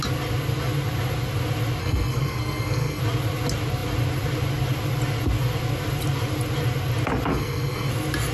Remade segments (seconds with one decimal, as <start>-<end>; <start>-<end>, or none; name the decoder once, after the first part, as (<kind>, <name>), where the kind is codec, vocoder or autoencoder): 1.8-3.0 (codec, SNAC); 7.3-7.9